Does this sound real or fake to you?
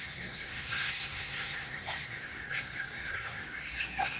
fake